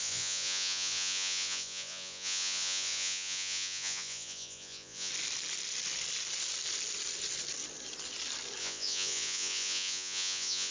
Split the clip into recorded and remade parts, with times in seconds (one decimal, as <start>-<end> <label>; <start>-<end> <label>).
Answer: 0.0-5.1 remade; 5.1-8.6 recorded; 8.6-10.7 remade